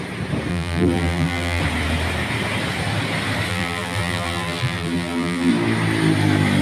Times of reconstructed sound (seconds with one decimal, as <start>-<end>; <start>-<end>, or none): 0.5-1.6; 3.5-5.5